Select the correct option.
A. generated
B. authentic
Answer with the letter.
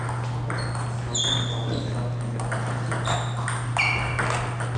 B